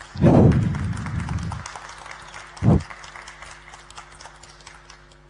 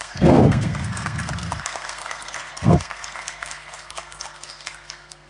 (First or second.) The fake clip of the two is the second